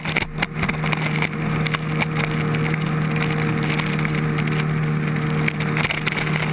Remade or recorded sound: recorded